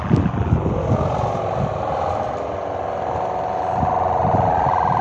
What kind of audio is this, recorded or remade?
recorded